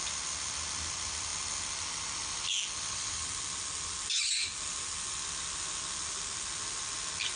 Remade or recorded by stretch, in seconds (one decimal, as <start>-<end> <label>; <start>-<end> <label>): 0.0-7.4 recorded